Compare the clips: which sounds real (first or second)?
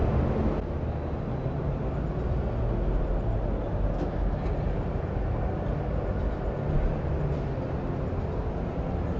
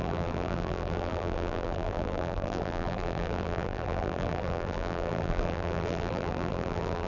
first